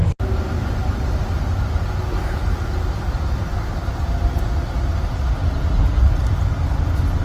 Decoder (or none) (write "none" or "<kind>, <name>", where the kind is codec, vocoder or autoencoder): none